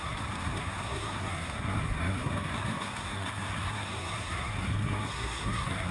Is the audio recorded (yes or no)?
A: no